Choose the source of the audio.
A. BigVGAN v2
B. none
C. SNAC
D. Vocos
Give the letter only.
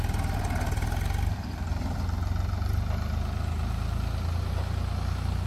B